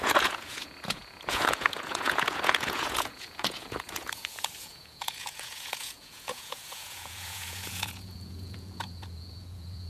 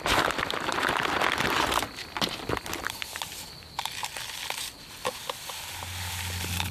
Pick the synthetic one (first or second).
first